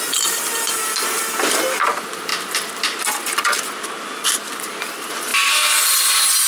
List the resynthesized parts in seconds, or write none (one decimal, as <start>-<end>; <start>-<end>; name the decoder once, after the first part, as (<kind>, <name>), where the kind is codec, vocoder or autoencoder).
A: none